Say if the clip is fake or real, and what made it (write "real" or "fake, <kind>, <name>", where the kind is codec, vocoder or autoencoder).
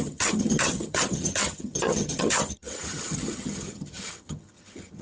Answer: fake, vocoder, HiFi-GAN